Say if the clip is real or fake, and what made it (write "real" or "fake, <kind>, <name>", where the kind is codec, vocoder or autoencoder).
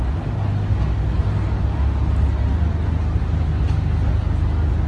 real